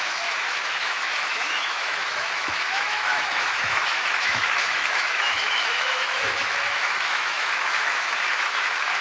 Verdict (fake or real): fake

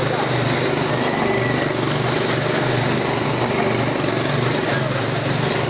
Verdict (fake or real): real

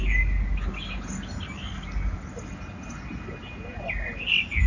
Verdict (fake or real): real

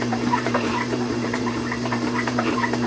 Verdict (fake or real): fake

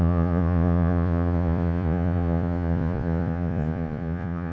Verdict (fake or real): fake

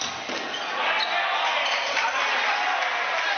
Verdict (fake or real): real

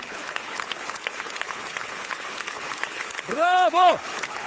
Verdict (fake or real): fake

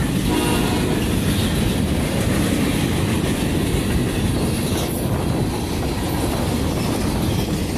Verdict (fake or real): real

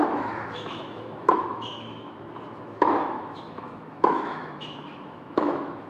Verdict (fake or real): fake